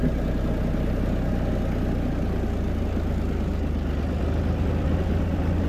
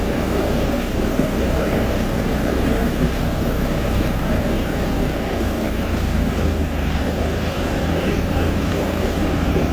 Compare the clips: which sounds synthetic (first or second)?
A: second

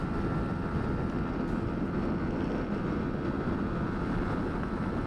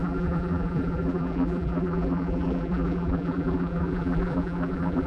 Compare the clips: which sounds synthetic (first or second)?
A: second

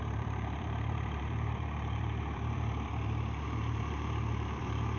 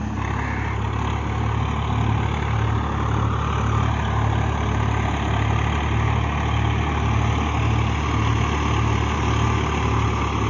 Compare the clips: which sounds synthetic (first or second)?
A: first